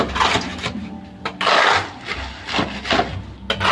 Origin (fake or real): real